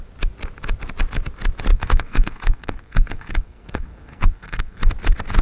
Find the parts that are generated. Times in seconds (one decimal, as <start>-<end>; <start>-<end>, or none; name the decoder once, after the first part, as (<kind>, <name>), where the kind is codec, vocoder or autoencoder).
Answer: 1.7-4.9 (codec, SNAC)